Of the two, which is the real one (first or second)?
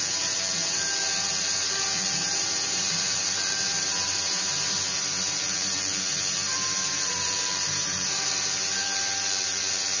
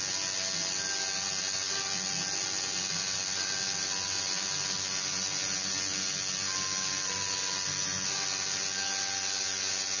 second